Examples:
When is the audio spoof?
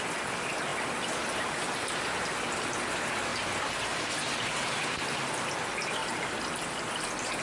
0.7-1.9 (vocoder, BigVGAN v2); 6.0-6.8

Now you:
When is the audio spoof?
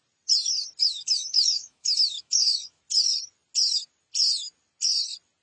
0.8-2.8 (autoencoder, DAC-VAE)